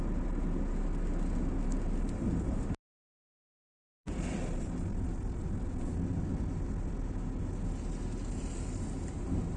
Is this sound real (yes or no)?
yes